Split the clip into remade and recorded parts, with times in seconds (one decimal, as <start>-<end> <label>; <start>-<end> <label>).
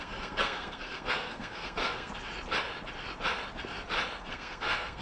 0.0-2.1 remade; 2.1-4.3 recorded; 4.3-5.0 remade